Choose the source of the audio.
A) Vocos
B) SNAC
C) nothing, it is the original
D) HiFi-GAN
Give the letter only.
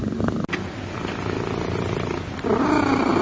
C